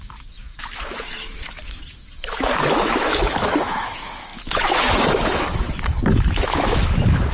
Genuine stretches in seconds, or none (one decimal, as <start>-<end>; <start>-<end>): none